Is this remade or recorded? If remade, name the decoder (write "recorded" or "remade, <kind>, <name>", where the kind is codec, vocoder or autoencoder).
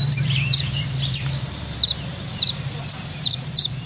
remade, vocoder, BigVGAN v2